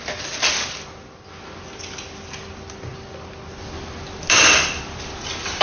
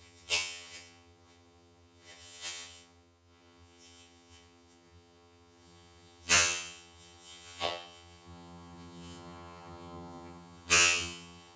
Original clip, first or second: first